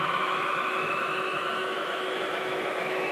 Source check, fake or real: fake